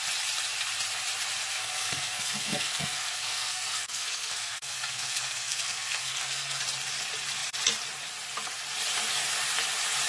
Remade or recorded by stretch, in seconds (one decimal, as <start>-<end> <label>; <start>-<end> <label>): 0.0-1.5 recorded; 1.5-6.6 remade; 6.6-10.1 recorded